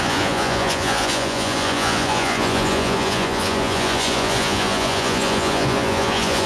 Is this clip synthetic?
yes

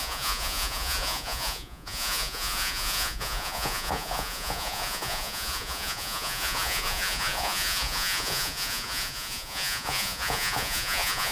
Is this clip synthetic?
yes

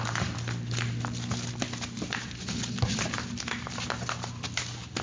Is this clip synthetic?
no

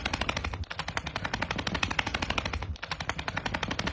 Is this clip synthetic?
no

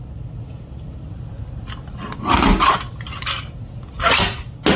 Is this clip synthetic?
no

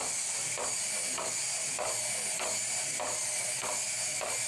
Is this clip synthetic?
no